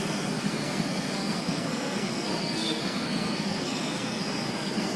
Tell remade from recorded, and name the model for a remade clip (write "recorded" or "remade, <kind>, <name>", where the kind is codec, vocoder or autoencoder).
remade, codec, SNAC